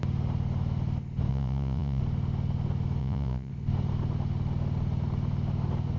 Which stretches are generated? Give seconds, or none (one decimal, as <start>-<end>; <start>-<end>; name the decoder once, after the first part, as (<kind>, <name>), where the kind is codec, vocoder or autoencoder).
1.3-2.0 (vocoder, Vocos); 3.0-3.5